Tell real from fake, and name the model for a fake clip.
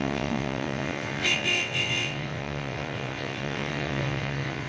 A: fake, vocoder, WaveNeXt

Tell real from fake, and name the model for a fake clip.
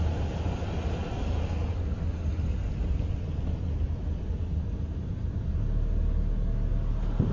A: real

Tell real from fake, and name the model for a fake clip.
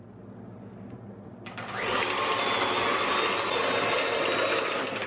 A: real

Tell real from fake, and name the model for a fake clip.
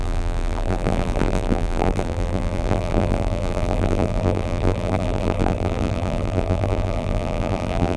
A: fake, vocoder, BigVGAN v2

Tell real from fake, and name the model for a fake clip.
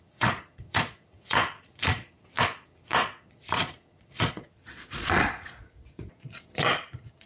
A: fake, vocoder, Vocos